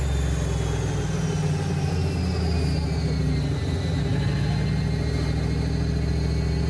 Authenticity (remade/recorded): recorded